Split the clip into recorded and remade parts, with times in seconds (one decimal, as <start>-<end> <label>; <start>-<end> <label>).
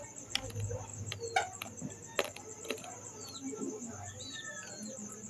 0.0-5.3 recorded